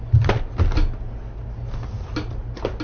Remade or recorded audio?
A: recorded